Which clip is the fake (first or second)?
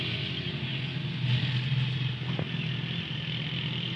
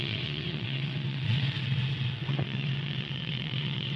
second